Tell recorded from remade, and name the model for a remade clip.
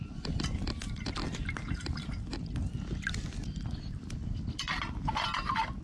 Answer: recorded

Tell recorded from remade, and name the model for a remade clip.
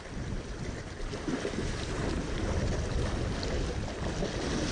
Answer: recorded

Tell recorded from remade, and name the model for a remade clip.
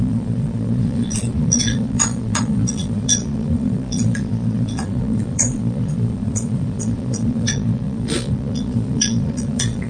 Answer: remade, vocoder, Vocos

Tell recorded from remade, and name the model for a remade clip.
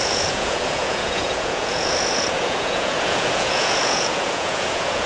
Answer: remade, vocoder, Vocos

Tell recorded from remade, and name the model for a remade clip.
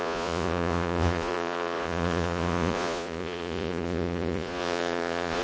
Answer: remade, vocoder, Vocos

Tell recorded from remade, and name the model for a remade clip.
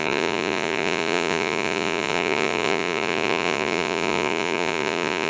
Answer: remade, vocoder, Vocos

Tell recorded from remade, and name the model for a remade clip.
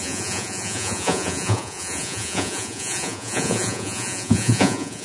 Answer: remade, vocoder, Vocos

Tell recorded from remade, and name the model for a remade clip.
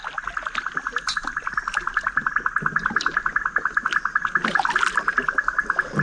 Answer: recorded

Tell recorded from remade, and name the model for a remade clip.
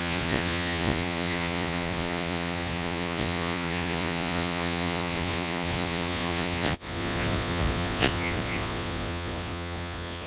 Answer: remade, vocoder, Vocos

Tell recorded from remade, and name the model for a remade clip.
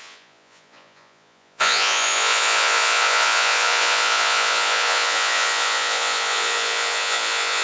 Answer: remade, vocoder, Vocos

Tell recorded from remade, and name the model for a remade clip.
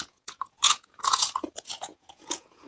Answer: remade, vocoder, Vocos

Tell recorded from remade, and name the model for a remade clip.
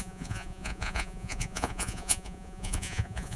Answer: remade, vocoder, Vocos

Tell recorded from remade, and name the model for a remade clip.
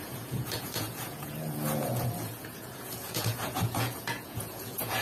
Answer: remade, vocoder, Vocos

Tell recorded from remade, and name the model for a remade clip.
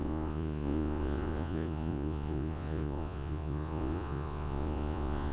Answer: remade, vocoder, Vocos